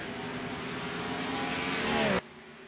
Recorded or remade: recorded